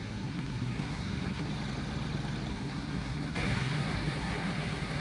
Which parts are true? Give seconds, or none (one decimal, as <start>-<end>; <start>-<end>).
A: 1.5-2.5